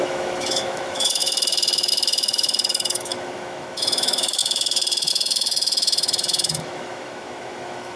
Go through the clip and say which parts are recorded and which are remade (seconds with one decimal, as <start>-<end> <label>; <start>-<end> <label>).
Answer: 0.0-8.0 remade